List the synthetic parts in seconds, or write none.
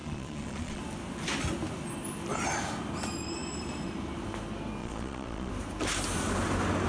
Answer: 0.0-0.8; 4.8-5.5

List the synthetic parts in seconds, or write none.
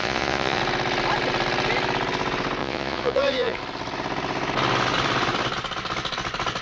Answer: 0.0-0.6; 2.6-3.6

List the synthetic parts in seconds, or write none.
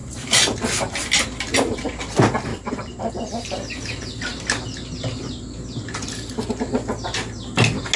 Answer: 0.0-0.9; 2.5-3.1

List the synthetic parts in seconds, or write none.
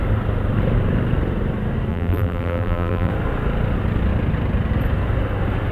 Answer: 1.9-3.1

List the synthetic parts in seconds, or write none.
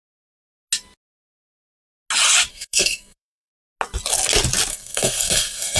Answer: 2.5-3.5; 4.7-5.8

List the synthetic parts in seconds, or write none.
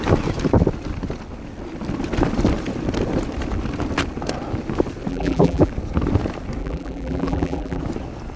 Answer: 5.1-5.7; 6.6-7.8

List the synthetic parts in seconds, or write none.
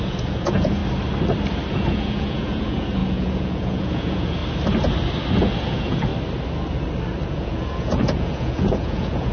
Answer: 0.0-0.8; 1.7-4.4; 5.3-6.1; 7.3-9.3